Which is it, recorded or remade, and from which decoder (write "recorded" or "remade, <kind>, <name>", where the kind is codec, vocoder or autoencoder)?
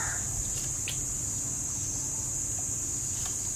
recorded